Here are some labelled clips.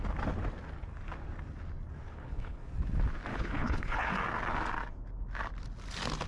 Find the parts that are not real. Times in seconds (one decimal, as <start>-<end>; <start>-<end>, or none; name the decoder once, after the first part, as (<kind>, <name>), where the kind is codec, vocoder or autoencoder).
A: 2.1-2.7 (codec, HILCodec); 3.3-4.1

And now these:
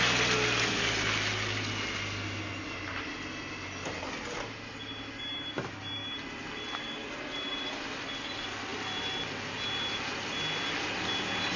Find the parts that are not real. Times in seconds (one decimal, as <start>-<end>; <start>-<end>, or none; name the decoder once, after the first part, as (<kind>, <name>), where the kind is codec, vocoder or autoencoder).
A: none

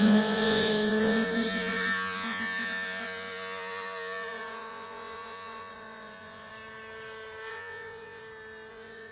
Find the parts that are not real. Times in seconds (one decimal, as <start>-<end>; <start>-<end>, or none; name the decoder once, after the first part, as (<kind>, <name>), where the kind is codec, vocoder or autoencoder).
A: 0.0-6.5 (vocoder, Vocos); 7.5-8.2; 8.7-9.1